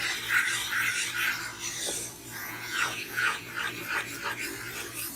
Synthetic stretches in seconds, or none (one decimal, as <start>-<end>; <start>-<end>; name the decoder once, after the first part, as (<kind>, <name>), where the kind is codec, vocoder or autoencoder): 2.4-3.5 (vocoder, Vocos)